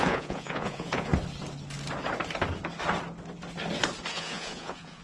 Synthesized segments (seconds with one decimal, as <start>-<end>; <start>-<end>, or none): 0.0-1.1; 4.1-5.0